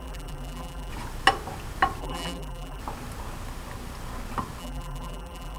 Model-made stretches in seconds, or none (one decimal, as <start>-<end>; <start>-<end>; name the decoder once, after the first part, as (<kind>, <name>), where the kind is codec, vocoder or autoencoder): 0.0-0.9 (vocoder, BigVGAN v2); 2.0-2.8; 4.6-5.6